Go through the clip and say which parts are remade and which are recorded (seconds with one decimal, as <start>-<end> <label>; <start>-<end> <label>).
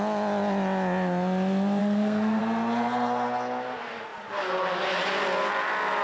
0.0-1.8 recorded; 1.8-2.4 remade; 2.4-6.0 recorded